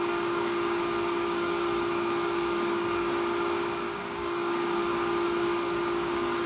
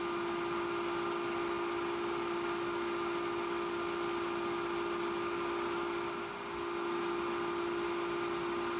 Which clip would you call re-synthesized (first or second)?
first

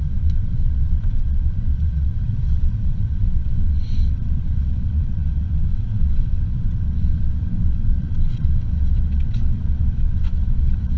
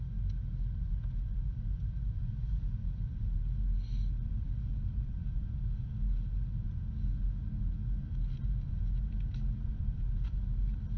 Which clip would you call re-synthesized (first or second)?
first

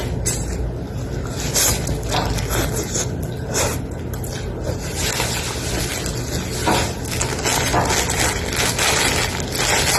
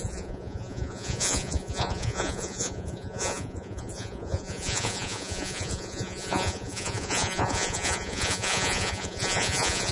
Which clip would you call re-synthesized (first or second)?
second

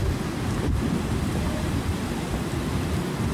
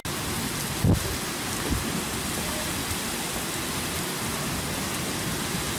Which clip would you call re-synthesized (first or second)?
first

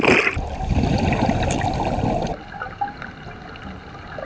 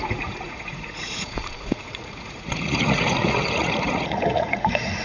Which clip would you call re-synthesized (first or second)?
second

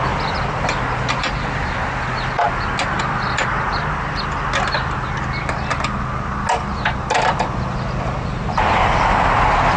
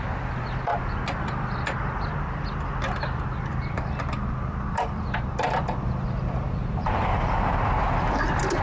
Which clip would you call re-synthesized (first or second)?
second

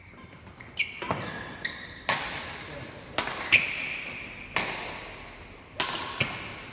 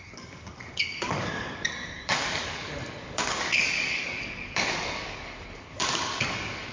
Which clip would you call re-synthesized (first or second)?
second